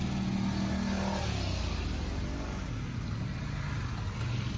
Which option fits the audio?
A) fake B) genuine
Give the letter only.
B